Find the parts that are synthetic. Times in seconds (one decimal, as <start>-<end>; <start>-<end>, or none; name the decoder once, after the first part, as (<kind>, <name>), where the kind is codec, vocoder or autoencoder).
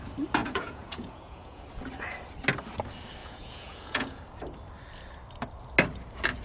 0.4-1.6 (vocoder, Vocos); 3.2-4.2